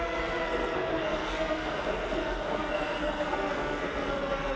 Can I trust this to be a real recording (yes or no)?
no